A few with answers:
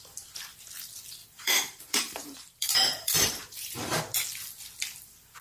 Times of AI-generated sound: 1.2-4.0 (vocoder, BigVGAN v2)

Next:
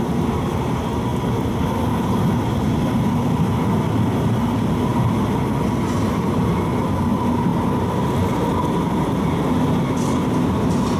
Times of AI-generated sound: none

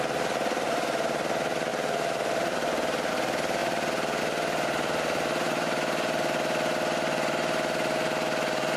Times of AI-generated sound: 0.0-3.6 (vocoder, BigVGAN v2); 4.2-8.8

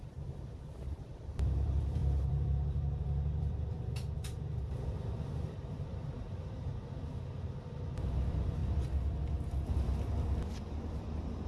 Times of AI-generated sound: 0.0-8.6 (vocoder, BigVGAN v2); 10.5-11.5